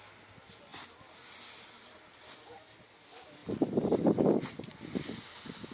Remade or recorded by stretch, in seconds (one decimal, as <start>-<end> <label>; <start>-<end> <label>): 0.0-5.7 recorded